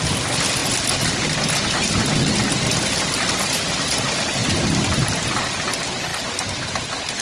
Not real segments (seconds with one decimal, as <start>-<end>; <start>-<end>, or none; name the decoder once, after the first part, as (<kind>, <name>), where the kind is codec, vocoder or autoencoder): none